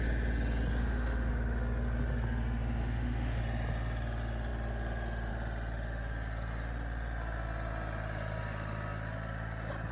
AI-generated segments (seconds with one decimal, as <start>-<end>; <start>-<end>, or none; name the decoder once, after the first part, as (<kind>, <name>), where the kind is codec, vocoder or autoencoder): 0.8-1.3 (autoencoder, DAC-VAE); 2.8-3.4